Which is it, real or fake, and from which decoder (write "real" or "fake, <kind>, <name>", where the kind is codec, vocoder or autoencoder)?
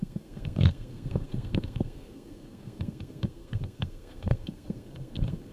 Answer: fake, codec, SNAC